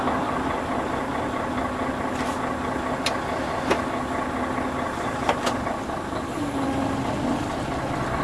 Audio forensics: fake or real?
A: real